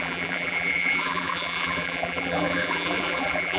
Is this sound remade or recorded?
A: remade